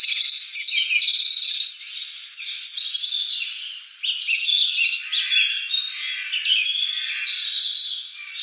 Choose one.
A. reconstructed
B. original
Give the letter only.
B